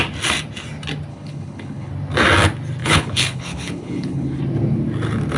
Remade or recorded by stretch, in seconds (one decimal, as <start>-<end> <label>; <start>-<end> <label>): 0.0-1.1 recorded; 1.1-1.9 remade; 1.9-2.8 recorded; 2.8-4.4 remade; 4.4-5.4 recorded